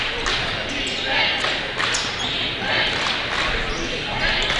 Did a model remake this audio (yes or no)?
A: no